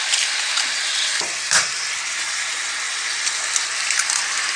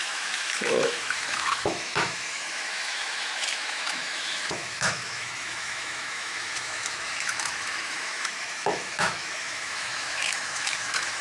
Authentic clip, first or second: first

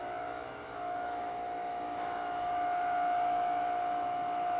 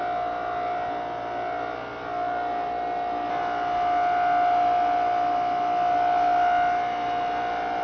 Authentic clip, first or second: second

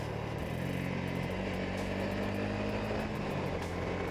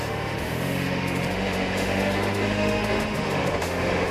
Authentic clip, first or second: first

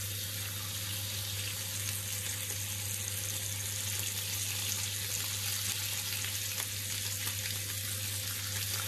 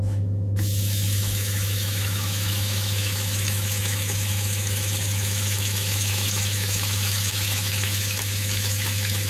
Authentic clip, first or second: first